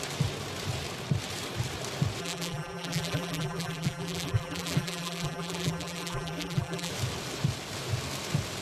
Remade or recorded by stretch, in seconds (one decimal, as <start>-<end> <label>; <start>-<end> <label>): 0.0-2.2 recorded; 2.2-6.9 remade; 6.9-8.6 recorded